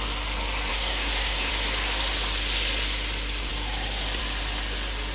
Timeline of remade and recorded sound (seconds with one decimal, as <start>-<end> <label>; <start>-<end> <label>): 0.0-0.7 recorded; 0.7-1.5 remade; 1.5-5.1 recorded